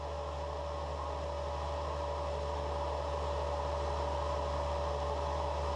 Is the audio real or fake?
real